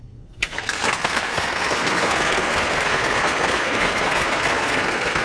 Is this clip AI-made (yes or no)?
yes